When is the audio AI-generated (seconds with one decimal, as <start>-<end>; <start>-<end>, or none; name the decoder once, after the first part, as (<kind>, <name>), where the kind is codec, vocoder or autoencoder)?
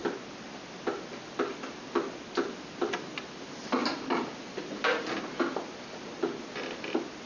2.5-7.3 (vocoder, BigVGAN v2)